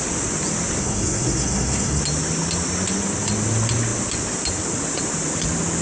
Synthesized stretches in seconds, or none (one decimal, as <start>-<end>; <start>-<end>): 0.8-2.0